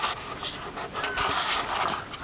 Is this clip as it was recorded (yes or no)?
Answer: yes